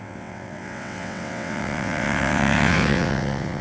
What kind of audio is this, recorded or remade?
remade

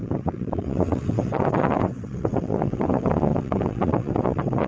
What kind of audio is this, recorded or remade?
remade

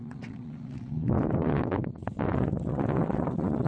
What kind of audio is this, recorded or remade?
remade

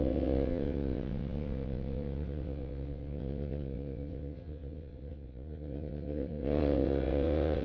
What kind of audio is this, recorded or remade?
remade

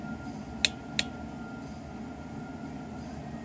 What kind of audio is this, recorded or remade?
recorded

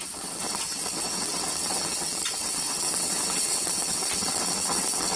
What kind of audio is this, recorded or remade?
remade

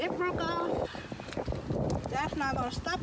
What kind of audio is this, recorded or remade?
recorded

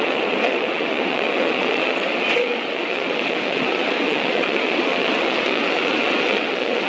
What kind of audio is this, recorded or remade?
remade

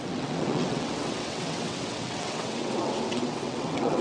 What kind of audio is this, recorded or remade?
remade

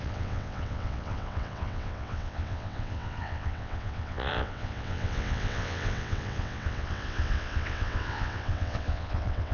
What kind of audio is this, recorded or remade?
remade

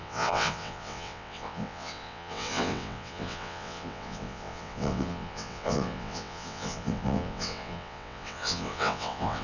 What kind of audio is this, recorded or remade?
remade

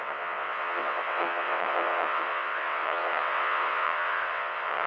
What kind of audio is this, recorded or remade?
remade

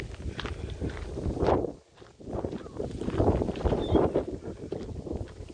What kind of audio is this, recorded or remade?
recorded